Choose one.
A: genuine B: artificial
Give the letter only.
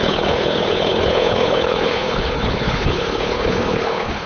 B